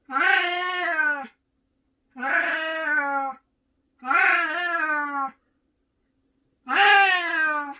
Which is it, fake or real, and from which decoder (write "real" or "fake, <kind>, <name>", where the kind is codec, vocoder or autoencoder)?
real